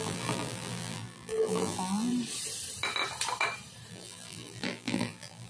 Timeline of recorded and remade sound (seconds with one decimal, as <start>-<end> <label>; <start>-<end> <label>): 0.0-2.1 remade; 2.1-3.9 recorded; 3.9-5.5 remade